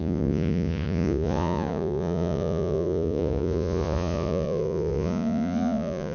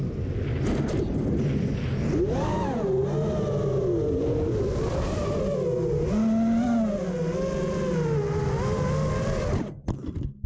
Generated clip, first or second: first